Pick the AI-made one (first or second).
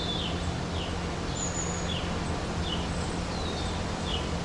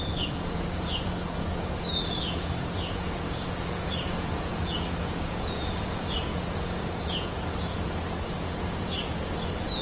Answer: second